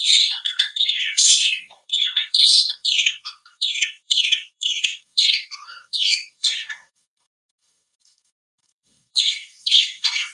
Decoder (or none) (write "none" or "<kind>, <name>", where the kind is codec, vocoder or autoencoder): codec, SNAC